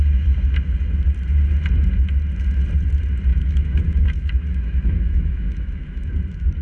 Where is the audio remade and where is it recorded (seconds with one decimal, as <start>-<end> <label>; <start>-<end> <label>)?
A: 0.0-3.3 recorded; 3.3-6.1 remade; 6.1-6.6 recorded